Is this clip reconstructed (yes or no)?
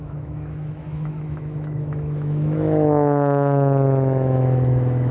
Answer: yes